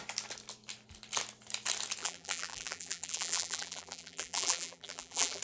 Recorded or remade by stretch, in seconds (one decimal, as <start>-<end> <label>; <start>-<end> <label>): 0.0-2.0 recorded; 2.0-5.4 remade